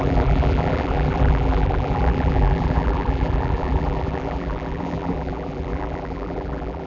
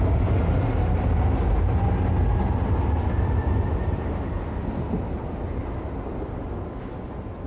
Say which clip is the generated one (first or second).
first